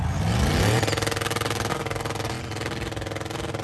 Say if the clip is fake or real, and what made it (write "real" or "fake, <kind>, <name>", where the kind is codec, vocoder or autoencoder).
real